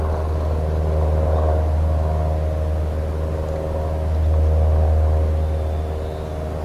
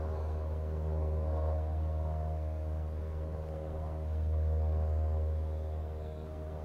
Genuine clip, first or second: first